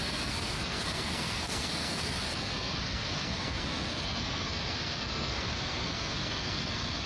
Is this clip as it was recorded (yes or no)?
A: no